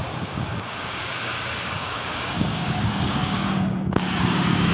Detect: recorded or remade remade